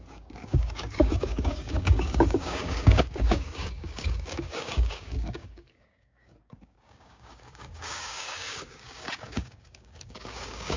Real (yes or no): no